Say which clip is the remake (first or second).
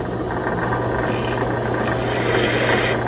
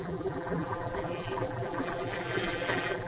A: second